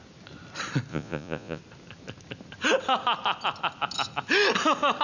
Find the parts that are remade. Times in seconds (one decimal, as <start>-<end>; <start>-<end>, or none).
0.9-1.6